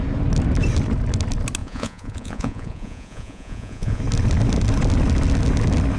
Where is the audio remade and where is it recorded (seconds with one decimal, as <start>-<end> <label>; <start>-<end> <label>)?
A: 0.0-1.6 recorded; 1.6-4.0 remade; 4.0-6.0 recorded